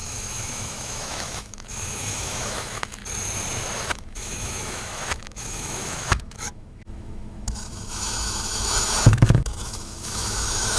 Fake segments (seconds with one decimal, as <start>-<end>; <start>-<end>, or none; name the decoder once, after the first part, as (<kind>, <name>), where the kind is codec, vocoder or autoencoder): 0.0-3.0 (autoencoder, DAC-VAE); 3.9-10.8